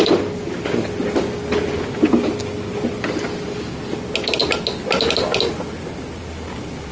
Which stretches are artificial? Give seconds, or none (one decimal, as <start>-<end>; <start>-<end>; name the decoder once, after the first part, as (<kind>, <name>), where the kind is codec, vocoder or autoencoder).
none